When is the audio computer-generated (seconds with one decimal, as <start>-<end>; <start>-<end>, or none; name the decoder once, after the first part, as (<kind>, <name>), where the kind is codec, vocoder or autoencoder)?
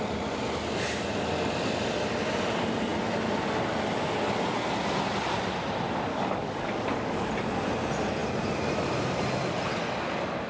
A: 6.1-7.3 (codec, DAC)